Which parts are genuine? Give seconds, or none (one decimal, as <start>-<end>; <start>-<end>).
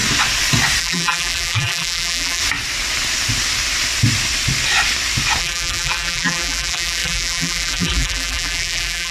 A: 0.0-0.8; 2.4-5.4